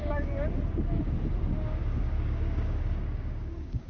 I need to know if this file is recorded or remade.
remade